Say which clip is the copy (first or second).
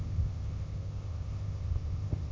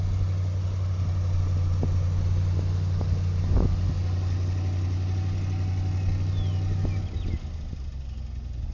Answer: first